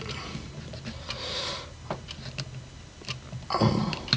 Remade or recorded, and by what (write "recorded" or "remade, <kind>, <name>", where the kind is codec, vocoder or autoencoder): recorded